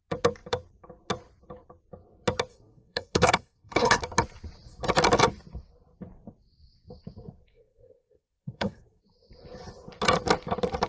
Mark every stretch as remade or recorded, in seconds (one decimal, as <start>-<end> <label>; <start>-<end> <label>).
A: 0.0-2.5 recorded; 2.5-4.0 remade; 4.0-7.5 recorded; 7.5-9.0 remade; 9.0-10.9 recorded